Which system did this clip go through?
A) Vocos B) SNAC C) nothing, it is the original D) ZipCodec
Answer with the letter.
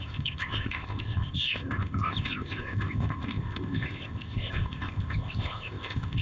D